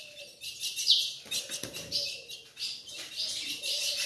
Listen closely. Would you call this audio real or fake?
real